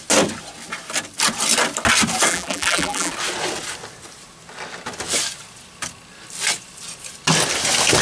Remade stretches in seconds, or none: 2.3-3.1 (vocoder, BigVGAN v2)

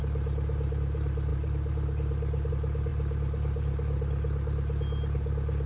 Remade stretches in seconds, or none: 1.3-2.5 (vocoder, BigVGAN v2)

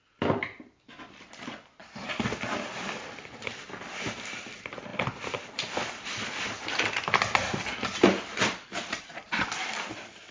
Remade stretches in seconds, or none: 0.0-10.3 (vocoder, BigVGAN v2)

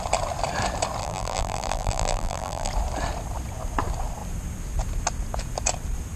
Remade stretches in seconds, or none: 1.0-2.7 (vocoder, BigVGAN v2)

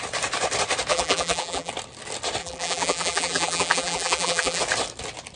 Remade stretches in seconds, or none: 0.9-1.7 (vocoder, BigVGAN v2); 2.4-4.6

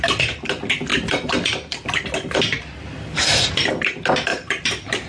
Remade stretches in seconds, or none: 4.3-5.1 (vocoder, BigVGAN v2)

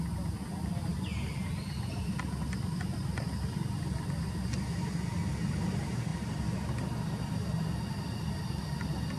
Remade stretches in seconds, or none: 0.9-2.1 (vocoder, BigVGAN v2); 6.1-7.2